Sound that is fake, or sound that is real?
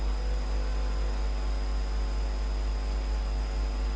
real